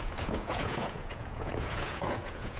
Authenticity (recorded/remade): remade